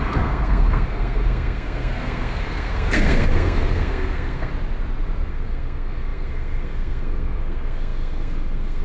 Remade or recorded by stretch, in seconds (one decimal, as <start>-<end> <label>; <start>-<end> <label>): 0.0-4.5 remade; 4.5-5.3 recorded; 5.3-8.8 remade